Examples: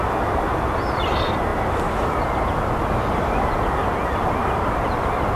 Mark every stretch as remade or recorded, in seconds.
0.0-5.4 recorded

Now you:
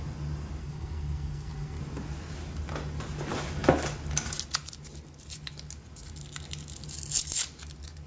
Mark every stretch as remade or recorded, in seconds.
0.0-0.6 recorded; 0.6-1.8 remade; 1.8-8.1 recorded

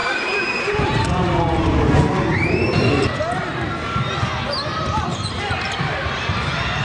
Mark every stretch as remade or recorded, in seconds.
0.0-1.9 remade; 1.9-2.3 recorded; 2.3-2.8 remade; 2.8-5.1 recorded; 5.1-6.2 remade; 6.2-6.8 recorded

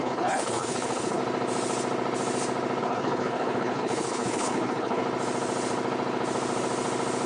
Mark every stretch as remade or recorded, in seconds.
0.0-1.2 remade; 1.2-2.8 recorded; 2.8-5.0 remade; 5.0-7.3 recorded

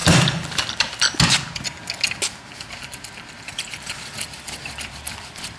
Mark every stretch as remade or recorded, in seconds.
0.0-3.4 recorded; 3.4-5.6 remade

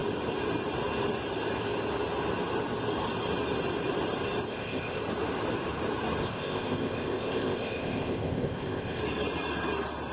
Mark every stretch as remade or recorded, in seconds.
0.0-4.5 recorded; 4.5-5.0 remade; 5.0-6.2 recorded; 6.2-9.0 remade; 9.0-10.1 recorded

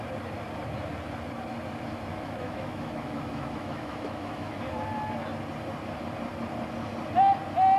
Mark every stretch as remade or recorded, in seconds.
0.0-2.1 recorded; 2.1-4.6 remade; 4.6-7.8 recorded